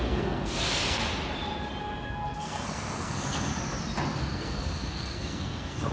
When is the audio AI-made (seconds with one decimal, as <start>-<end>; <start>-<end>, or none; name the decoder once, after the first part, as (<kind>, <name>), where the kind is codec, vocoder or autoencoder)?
0.0-1.0 (codec, SNAC); 1.8-3.5; 4.2-5.9